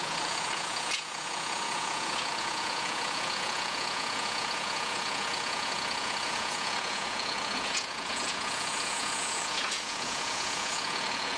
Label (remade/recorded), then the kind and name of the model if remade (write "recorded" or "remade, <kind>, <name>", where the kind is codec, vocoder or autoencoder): remade, vocoder, Vocos